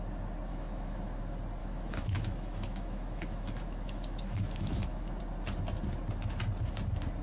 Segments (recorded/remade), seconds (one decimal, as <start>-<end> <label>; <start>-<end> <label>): 0.0-0.5 recorded; 0.5-1.2 remade; 1.2-1.6 recorded; 1.6-5.2 remade; 5.2-7.2 recorded